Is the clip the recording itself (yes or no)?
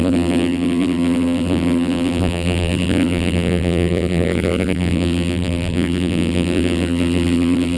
no